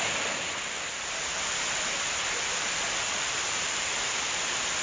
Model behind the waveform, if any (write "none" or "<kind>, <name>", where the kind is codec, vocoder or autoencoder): vocoder, BigVGAN v2